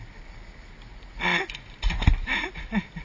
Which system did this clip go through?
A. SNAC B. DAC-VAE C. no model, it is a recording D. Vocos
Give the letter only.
C